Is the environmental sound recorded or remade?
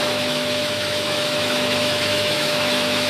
remade